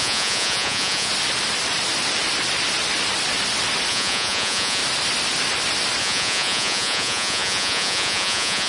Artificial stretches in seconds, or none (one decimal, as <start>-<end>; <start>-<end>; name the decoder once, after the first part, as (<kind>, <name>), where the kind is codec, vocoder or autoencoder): 0.0-1.1 (vocoder, Vocos); 3.9-4.8; 6.0-8.7